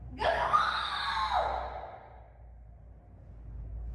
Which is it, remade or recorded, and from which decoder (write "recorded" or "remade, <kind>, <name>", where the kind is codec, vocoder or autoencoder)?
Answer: recorded